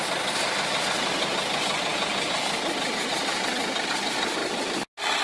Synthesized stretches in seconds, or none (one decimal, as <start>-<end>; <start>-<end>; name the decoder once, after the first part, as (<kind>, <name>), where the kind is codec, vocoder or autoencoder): none